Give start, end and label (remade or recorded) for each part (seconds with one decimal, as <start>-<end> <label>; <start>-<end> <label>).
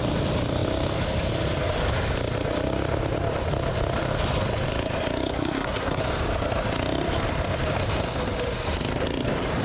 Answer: 0.0-5.3 recorded; 5.3-6.0 remade; 6.0-9.6 recorded